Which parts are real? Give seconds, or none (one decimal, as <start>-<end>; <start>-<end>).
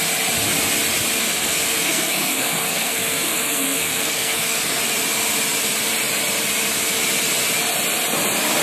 0.0-1.2; 4.8-8.6